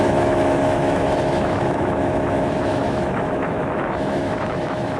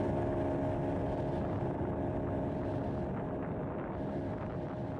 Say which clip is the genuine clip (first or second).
second